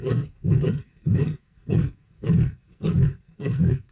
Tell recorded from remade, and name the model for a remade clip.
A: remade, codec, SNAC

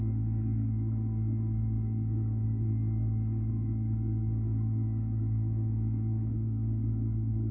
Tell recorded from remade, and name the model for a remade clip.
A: remade, codec, SNAC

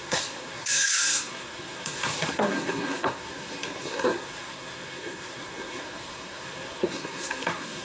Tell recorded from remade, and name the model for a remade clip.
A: remade, codec, SNAC